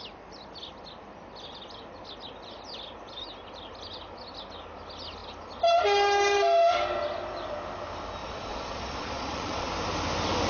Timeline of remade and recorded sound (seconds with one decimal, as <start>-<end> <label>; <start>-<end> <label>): 0.0-8.2 recorded; 8.2-9.7 remade; 9.7-10.5 recorded

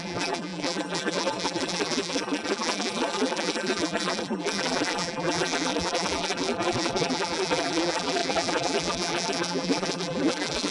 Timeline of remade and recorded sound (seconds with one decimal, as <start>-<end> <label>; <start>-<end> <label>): 0.0-10.7 remade

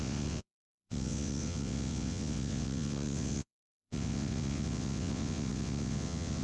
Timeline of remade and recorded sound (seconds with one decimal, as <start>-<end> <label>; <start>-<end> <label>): 0.0-6.4 remade

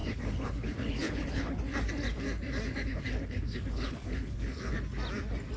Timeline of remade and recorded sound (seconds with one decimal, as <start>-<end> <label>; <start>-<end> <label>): 0.0-1.6 remade; 1.6-2.9 recorded; 2.9-4.7 remade; 4.7-5.6 recorded

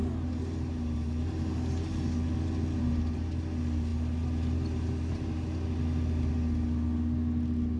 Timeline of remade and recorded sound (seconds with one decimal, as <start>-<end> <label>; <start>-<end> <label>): 0.0-7.8 recorded

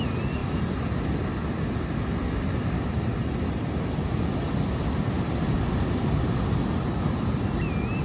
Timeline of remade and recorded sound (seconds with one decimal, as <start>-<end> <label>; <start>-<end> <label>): 0.0-8.0 recorded

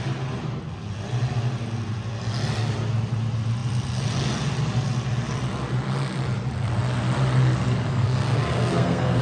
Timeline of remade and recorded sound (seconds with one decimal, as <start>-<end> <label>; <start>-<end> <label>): 0.0-7.9 recorded; 7.9-9.2 remade

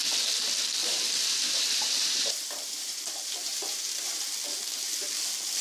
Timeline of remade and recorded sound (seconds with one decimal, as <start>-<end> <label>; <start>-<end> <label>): 0.0-0.8 recorded; 0.8-4.2 remade; 4.2-5.6 recorded